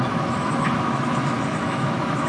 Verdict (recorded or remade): remade